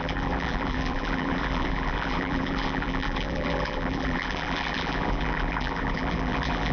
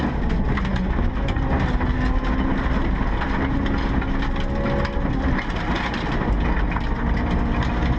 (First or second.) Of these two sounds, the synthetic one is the first